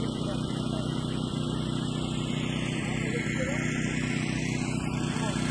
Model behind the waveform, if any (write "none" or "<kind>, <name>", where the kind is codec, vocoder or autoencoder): none